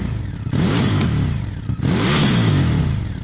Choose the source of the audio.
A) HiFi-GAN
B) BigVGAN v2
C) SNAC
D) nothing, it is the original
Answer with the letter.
B